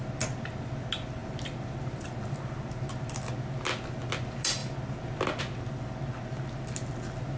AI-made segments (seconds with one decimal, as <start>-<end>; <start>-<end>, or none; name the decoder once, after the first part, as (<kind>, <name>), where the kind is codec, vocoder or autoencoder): none